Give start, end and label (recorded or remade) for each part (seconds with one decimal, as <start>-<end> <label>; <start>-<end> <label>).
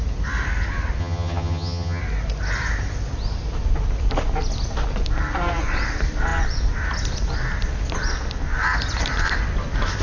0.0-1.0 recorded; 1.0-2.0 remade; 2.0-10.0 recorded